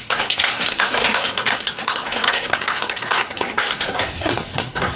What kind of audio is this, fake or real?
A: fake